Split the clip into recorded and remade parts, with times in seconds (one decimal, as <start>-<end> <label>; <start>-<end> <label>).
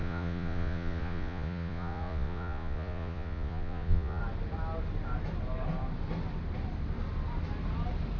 0.0-4.2 remade; 4.2-8.2 recorded